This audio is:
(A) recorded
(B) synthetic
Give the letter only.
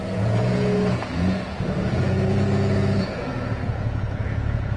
B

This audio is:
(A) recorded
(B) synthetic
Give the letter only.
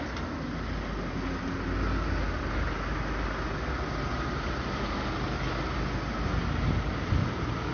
A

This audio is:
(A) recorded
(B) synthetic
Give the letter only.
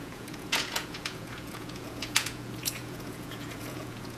B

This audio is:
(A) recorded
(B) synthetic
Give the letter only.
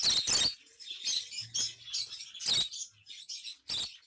A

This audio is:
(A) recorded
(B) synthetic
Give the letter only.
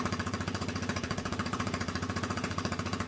B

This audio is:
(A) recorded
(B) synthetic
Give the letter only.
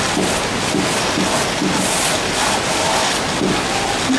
A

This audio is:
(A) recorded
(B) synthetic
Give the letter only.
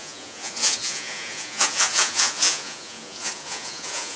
B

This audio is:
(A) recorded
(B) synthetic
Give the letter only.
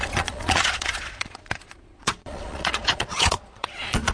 B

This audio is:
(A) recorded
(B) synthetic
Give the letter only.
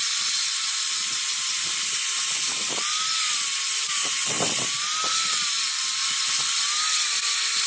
A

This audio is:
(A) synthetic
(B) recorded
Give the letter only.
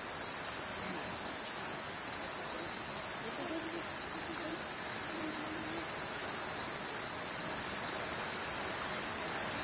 B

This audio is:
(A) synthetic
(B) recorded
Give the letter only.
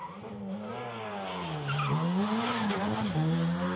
B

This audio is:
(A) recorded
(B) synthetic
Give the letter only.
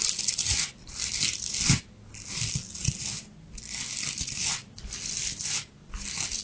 A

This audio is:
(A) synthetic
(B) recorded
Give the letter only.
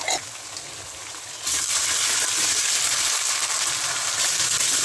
B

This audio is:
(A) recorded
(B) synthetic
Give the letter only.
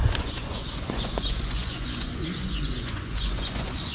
B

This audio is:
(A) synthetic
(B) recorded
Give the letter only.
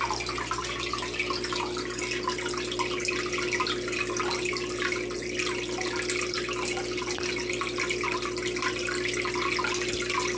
B